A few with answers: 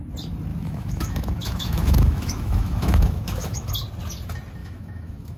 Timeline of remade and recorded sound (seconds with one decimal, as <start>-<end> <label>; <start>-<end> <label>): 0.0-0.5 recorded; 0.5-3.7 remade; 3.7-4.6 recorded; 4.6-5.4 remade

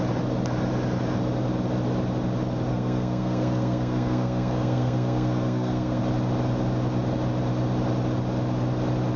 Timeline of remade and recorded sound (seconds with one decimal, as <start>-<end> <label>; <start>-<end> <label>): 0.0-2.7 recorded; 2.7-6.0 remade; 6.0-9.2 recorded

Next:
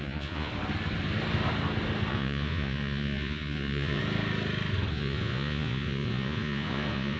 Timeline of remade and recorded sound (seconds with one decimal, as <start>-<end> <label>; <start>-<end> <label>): 0.0-0.5 remade; 0.5-2.1 recorded; 2.1-4.0 remade; 4.0-4.9 recorded; 4.9-7.2 remade